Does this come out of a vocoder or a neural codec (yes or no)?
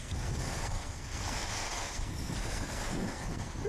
yes